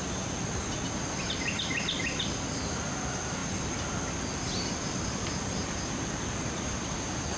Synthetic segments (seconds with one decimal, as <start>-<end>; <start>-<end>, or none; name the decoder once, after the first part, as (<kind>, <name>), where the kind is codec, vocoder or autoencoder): none